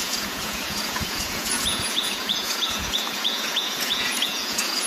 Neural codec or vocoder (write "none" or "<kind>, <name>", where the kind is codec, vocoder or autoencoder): vocoder, Vocos